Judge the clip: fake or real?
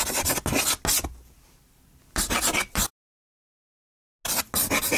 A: real